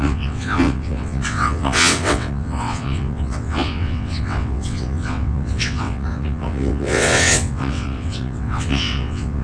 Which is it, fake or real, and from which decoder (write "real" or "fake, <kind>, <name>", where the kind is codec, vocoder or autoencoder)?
fake, vocoder, WaveNeXt